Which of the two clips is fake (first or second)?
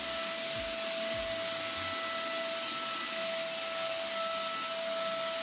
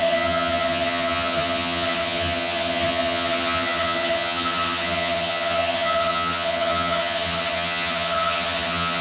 second